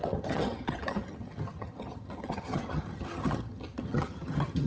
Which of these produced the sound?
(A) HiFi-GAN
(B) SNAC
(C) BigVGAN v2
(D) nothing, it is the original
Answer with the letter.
A